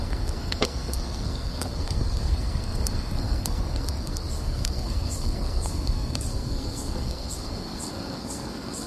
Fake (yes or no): yes